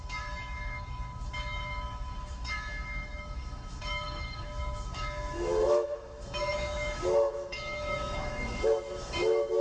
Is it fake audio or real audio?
fake